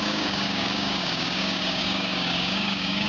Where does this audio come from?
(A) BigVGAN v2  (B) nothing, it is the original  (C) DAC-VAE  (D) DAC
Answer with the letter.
D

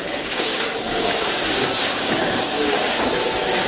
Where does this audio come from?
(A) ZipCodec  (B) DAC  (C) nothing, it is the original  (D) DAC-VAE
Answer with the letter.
B